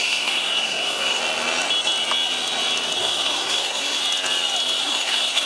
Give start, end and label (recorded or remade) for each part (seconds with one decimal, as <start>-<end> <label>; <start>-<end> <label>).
0.0-1.2 remade; 1.2-3.0 recorded; 3.0-4.0 remade; 4.0-4.8 recorded; 4.8-5.5 remade